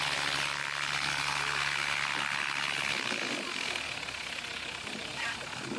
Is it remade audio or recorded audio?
recorded